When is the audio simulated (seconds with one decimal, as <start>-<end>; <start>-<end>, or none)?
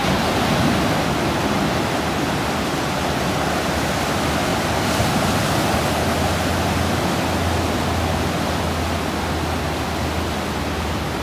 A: none